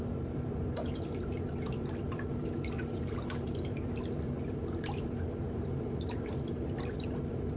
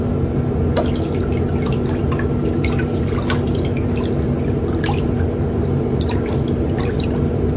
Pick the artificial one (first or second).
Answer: first